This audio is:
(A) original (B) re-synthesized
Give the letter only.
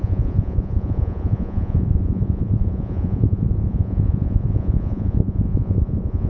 B